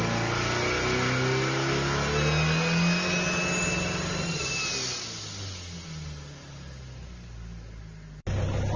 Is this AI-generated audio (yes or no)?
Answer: no